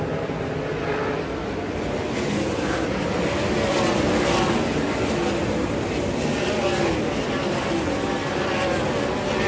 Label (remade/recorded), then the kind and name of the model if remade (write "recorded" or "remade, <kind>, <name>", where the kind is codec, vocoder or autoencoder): recorded